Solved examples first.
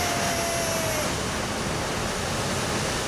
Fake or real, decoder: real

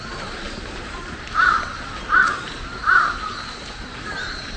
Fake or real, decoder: fake, vocoder, BigVGAN v2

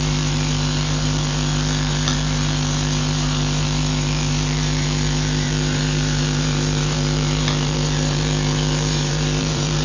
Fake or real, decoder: fake, vocoder, BigVGAN v2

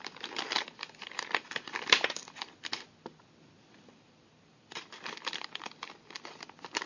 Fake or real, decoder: fake, vocoder, BigVGAN v2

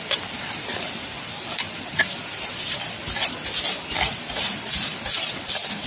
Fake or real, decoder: fake, vocoder, BigVGAN v2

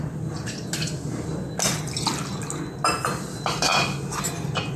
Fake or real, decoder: real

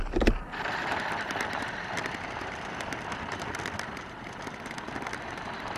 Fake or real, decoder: fake, vocoder, BigVGAN v2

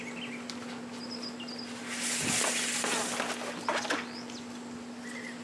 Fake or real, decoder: real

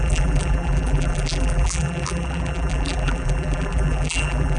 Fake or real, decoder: fake, vocoder, BigVGAN v2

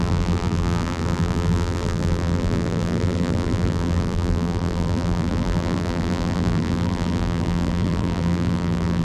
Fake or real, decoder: fake, vocoder, BigVGAN v2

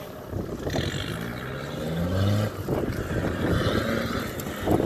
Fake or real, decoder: real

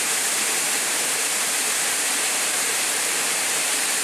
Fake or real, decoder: fake, vocoder, BigVGAN v2